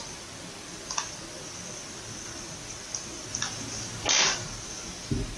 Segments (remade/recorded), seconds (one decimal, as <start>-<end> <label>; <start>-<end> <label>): 0.0-5.4 recorded